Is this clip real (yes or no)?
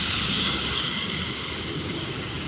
no